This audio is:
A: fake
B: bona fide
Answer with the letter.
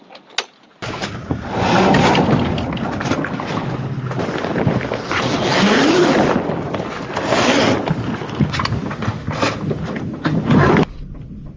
B